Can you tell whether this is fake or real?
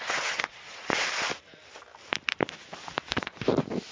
real